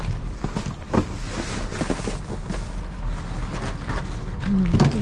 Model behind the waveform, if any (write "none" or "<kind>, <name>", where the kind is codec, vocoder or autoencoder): none